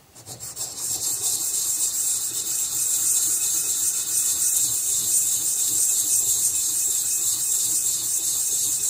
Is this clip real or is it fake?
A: fake